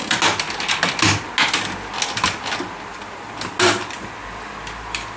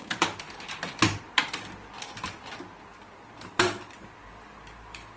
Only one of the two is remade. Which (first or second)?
second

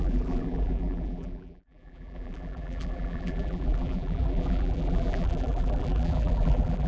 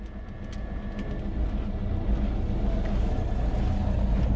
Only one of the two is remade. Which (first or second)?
first